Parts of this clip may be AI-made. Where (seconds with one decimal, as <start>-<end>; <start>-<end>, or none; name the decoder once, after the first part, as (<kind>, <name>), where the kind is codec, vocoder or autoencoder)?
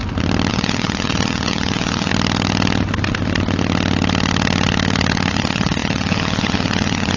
0.5-2.1 (vocoder, Vocos); 5.3-7.2